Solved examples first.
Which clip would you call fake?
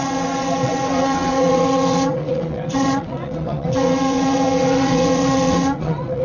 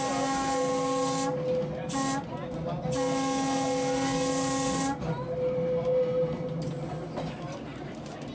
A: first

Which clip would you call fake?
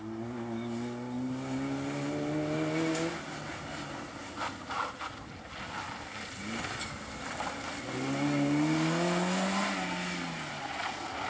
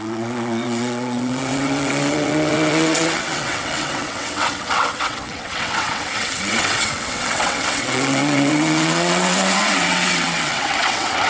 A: second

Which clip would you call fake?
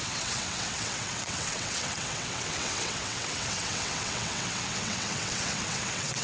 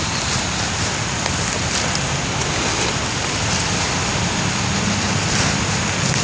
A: first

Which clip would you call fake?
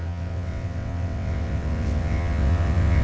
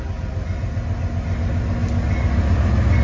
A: first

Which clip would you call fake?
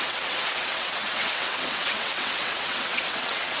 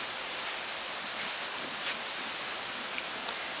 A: first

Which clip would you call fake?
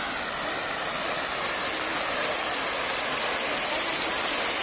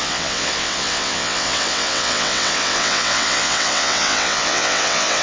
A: second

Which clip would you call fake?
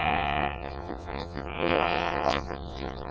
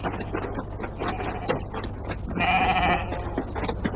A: first